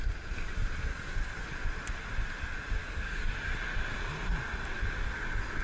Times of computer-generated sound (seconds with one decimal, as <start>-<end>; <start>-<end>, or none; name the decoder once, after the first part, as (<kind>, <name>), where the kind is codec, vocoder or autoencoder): 0.9-1.4 (codec, DAC); 2.8-3.3